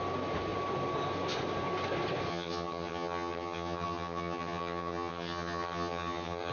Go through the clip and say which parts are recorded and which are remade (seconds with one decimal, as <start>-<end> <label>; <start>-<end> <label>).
0.0-2.3 recorded; 2.3-6.5 remade